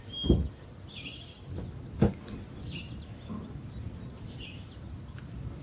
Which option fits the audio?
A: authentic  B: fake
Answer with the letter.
A